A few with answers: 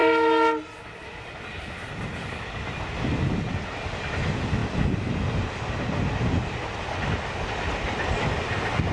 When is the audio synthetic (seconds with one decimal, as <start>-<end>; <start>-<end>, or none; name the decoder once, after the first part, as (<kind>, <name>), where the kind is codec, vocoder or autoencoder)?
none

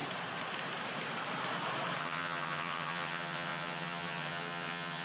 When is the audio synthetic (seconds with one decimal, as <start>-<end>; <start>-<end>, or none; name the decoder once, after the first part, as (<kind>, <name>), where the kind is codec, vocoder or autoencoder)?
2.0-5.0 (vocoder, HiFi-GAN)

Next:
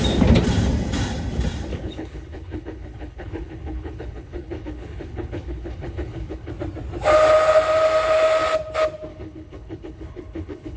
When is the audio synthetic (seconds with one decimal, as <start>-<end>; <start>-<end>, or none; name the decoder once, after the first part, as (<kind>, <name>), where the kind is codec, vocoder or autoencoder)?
1.7-6.5 (codec, HILCodec); 9.1-10.8

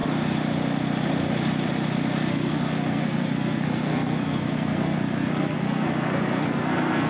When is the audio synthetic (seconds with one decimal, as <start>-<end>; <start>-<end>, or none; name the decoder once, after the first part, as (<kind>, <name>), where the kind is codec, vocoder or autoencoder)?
2.3-7.1 (codec, SNAC)